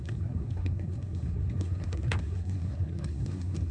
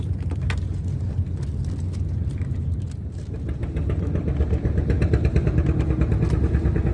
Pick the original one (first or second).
second